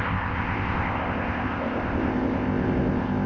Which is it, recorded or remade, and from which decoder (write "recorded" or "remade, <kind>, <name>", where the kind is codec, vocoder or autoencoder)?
remade, codec, ZipCodec